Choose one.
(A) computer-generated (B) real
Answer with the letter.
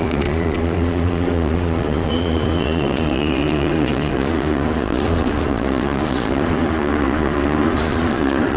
A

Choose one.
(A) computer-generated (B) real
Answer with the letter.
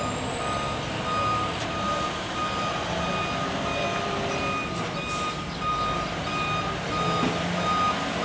B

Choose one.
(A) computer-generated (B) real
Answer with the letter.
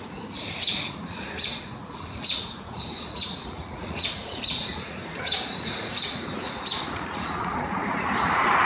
A